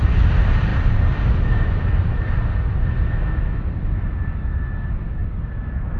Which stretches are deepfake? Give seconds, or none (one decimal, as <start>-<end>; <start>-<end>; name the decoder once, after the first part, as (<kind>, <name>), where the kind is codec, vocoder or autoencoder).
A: none